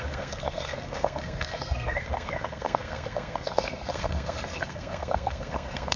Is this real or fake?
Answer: fake